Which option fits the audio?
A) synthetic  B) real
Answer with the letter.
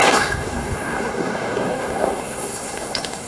A